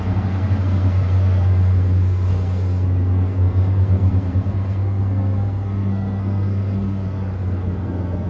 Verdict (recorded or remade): remade